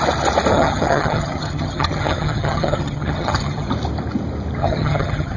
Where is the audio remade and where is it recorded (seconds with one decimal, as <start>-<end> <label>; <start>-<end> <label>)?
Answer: 0.0-0.5 recorded; 0.5-3.7 remade; 3.7-4.6 recorded; 4.6-5.4 remade